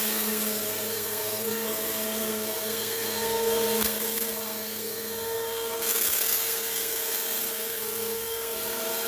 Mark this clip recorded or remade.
remade